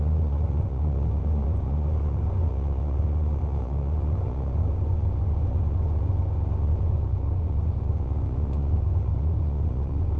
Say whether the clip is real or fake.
fake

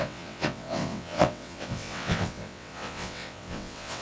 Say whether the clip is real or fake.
fake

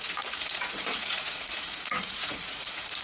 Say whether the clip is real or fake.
fake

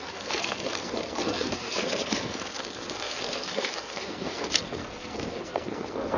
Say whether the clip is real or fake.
fake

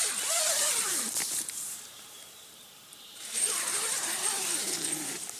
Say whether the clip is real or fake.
fake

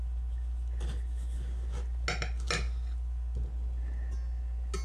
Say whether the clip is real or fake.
real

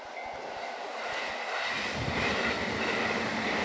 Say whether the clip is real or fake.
real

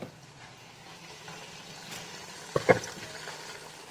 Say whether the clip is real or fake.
real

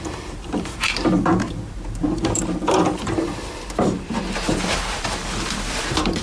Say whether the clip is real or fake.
fake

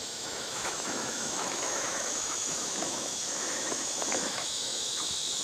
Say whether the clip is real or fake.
fake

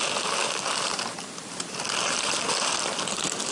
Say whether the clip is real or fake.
real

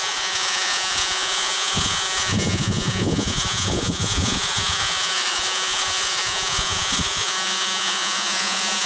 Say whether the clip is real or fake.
fake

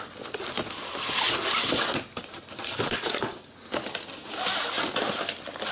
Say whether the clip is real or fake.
real